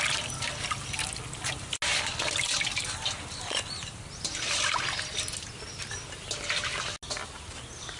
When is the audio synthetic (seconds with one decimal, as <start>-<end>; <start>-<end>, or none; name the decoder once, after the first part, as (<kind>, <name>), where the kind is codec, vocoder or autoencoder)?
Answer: none